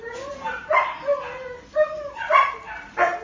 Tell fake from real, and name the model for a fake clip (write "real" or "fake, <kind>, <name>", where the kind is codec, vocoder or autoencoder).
real